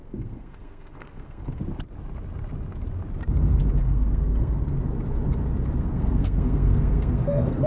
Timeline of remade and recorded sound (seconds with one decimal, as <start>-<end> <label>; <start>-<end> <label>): 0.0-1.6 remade; 1.6-3.8 recorded; 3.8-4.8 remade; 4.8-5.8 recorded; 5.8-7.7 remade